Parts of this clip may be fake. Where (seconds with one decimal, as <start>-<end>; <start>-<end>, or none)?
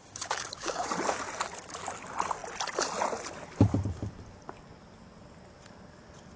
0.0-0.9